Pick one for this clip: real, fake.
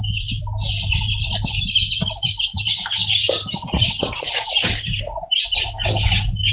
real